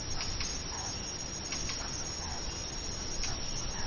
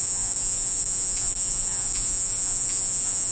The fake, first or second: second